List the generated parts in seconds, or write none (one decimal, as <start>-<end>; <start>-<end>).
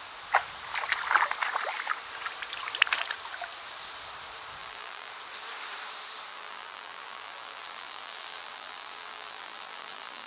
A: 4.6-5.1; 6.3-10.3